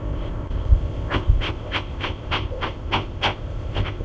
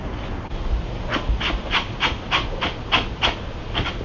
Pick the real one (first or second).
second